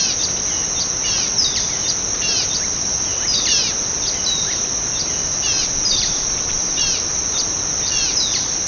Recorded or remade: recorded